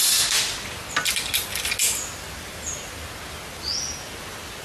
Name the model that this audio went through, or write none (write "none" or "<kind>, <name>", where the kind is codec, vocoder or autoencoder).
none